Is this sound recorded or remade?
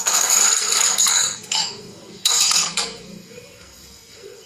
remade